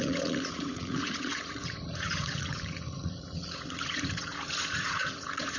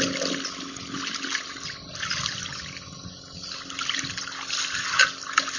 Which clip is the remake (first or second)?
first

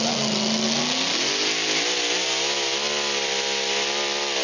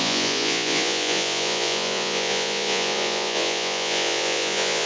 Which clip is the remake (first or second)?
second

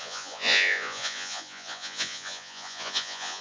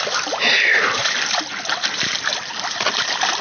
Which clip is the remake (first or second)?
first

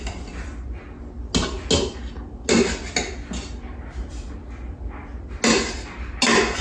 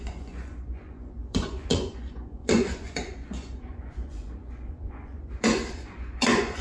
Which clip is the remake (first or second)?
second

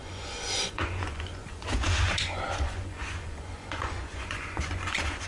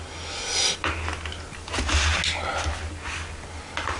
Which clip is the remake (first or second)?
first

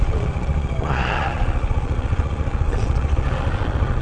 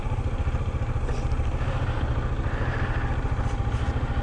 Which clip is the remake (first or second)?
first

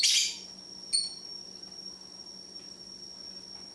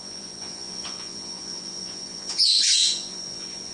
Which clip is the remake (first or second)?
second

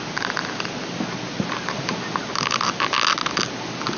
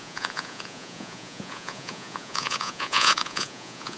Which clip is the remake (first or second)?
second